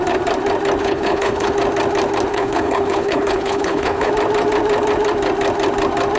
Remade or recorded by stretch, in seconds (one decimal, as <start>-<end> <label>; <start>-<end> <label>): 0.0-0.8 recorded; 0.8-1.5 remade; 1.5-2.3 recorded; 2.3-4.1 remade; 4.1-6.2 recorded